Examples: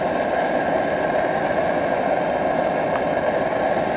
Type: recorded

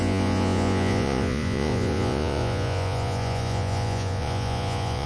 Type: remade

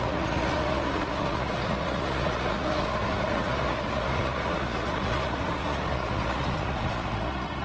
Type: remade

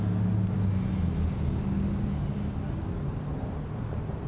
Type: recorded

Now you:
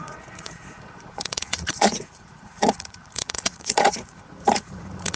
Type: remade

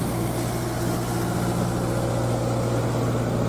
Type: recorded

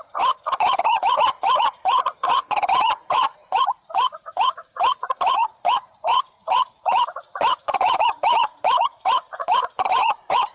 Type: remade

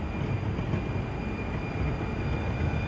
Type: recorded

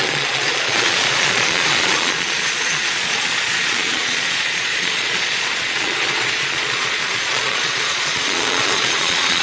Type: remade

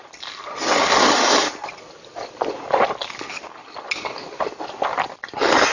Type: recorded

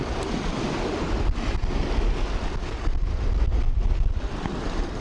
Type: recorded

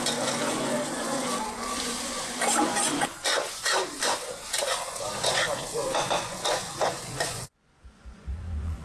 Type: remade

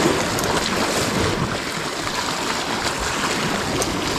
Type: recorded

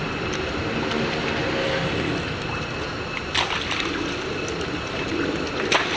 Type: recorded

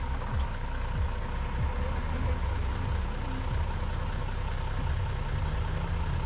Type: recorded